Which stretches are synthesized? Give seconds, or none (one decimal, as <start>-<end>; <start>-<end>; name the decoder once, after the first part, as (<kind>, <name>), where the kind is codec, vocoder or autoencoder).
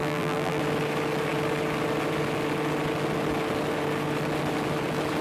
0.0-0.6 (vocoder, BigVGAN v2)